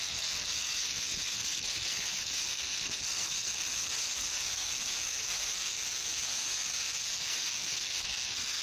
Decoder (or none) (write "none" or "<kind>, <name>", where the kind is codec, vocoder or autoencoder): codec, SNAC